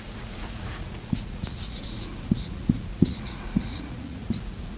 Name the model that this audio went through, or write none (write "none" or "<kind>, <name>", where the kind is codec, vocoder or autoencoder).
vocoder, Vocos